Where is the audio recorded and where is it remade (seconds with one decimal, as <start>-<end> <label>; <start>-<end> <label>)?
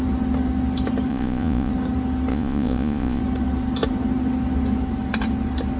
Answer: 0.0-1.1 recorded; 1.1-1.7 remade; 1.7-2.3 recorded; 2.3-3.2 remade; 3.2-5.8 recorded